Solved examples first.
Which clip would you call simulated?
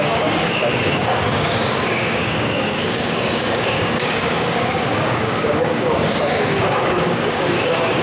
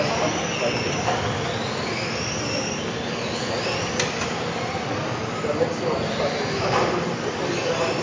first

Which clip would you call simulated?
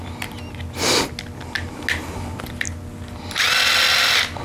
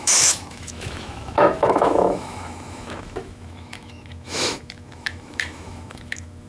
second